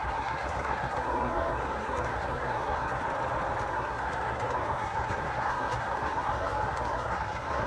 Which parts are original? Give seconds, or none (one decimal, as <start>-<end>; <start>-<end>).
3.0-3.7